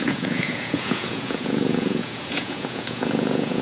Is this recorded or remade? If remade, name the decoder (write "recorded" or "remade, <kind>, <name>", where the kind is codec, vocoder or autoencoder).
remade, vocoder, Vocos